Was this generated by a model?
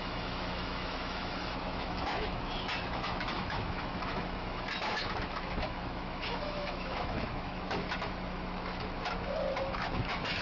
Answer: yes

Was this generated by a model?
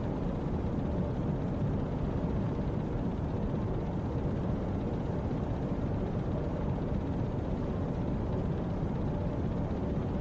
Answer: no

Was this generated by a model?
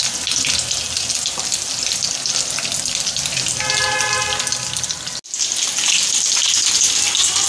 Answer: no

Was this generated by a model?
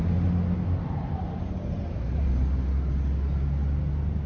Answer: no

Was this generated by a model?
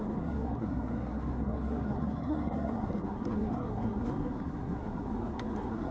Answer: yes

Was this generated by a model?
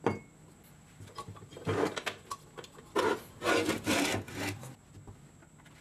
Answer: no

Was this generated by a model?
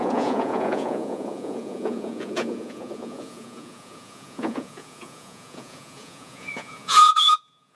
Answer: yes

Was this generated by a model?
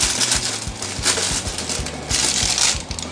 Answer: no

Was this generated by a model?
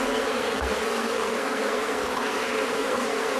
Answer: yes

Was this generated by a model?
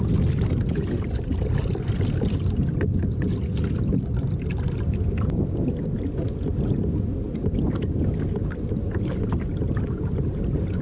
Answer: no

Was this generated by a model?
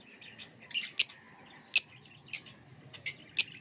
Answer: no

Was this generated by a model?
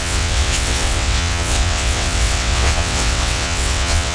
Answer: yes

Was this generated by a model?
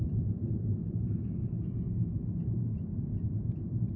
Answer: yes